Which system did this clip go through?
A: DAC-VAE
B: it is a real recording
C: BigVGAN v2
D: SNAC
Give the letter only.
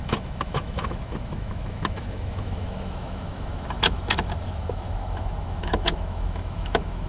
A